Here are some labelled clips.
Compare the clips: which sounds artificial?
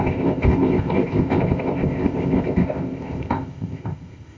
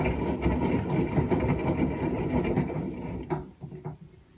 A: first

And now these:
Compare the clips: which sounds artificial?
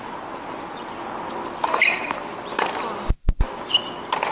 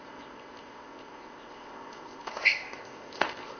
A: second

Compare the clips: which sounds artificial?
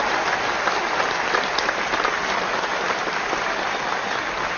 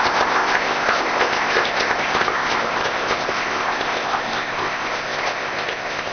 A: second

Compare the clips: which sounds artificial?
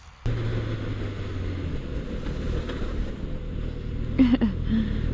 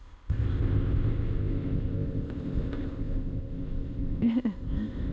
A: second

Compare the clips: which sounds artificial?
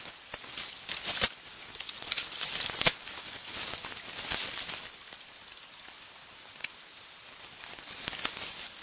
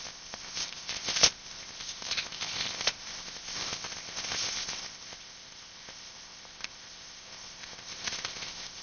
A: second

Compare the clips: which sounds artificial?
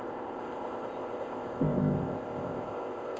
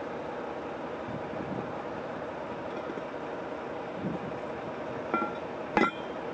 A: first